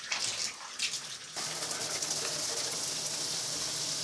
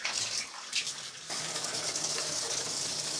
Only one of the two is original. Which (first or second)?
first